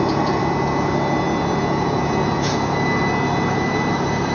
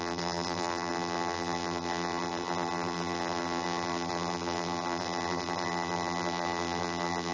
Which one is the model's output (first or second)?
second